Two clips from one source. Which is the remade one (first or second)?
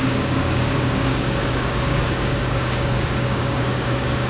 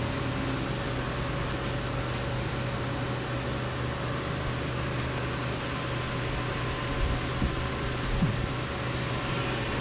first